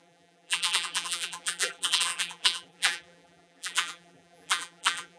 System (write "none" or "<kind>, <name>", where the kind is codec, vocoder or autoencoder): vocoder, BigVGAN v2